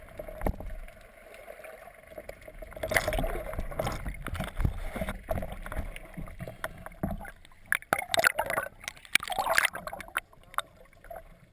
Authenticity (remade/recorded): recorded